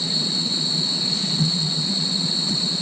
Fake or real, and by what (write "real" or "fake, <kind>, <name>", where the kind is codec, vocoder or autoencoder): fake, vocoder, Vocos